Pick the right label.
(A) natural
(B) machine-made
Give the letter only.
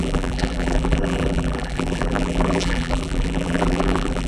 B